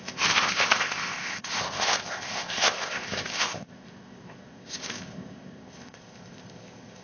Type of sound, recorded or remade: remade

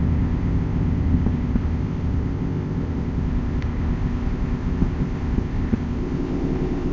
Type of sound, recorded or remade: remade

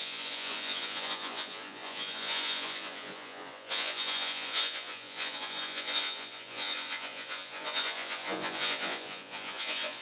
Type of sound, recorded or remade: remade